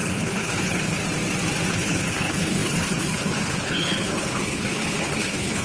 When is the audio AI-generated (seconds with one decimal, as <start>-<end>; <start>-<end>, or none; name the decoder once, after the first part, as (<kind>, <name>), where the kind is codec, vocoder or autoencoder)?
0.0-1.0 (codec, HILCodec); 1.7-5.6